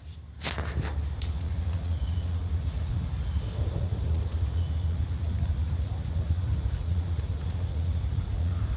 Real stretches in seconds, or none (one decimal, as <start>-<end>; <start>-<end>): 0.0-1.2; 3.1-3.6